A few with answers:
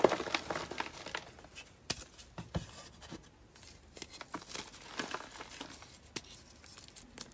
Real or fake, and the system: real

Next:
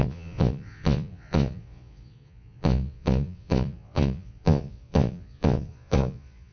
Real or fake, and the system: fake, vocoder, Vocos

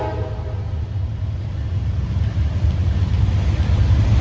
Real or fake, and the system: real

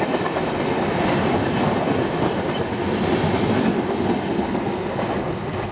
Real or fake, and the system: real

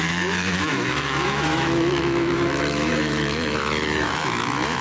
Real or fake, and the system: fake, autoencoder, DAC-VAE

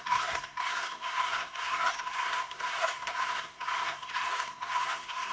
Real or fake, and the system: fake, codec, SNAC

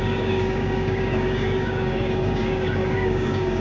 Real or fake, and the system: fake, codec, DAC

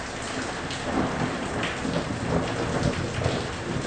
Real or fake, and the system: real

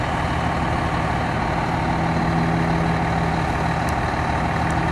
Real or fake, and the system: real